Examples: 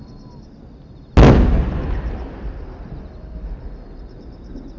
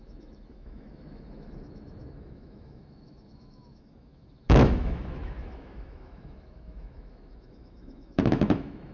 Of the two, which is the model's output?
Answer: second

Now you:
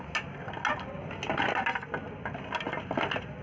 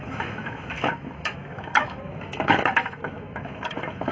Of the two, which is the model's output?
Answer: second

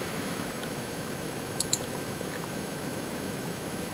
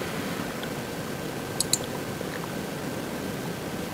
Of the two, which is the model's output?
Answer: first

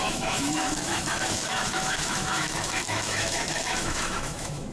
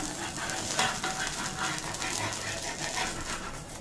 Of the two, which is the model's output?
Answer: first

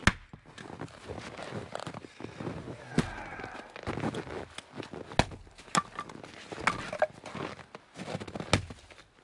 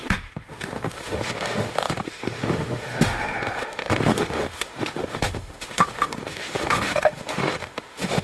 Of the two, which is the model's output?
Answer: second